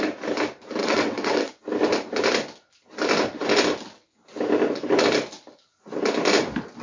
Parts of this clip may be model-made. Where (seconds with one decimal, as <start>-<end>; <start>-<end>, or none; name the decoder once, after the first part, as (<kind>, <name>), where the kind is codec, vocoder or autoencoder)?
0.8-1.5 (vocoder, WaveNeXt)